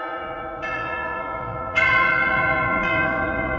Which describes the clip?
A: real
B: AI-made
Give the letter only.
B